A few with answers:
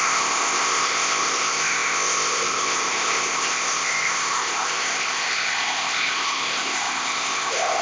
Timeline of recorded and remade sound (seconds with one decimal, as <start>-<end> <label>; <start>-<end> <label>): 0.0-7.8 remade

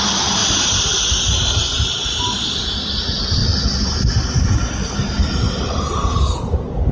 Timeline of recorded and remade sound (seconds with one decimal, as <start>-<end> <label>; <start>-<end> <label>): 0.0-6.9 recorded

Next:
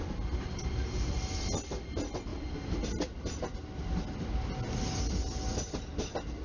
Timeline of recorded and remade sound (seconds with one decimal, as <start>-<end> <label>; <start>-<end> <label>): 0.0-6.4 recorded

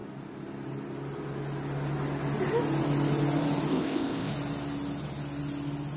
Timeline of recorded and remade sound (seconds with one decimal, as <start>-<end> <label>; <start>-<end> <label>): 0.0-3.7 recorded; 3.7-4.3 remade; 4.3-6.0 recorded

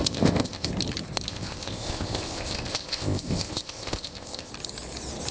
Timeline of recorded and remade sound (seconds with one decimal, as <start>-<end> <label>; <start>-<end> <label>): 0.0-0.7 remade; 0.7-1.3 recorded; 1.3-4.5 remade; 4.5-5.3 recorded

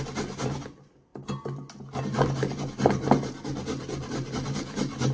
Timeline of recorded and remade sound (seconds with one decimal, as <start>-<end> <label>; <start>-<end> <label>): 0.0-5.1 recorded

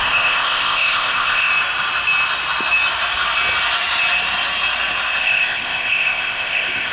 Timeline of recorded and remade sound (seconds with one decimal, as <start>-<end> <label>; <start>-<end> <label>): 0.0-1.5 remade; 1.5-5.2 recorded; 5.2-6.9 remade